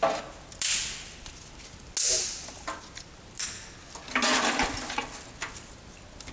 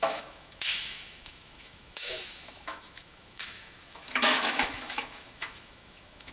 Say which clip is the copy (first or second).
second